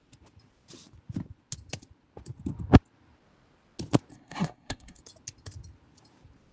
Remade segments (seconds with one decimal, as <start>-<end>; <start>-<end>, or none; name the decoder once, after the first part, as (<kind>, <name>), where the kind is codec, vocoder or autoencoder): 4.1-5.0 (codec, SNAC)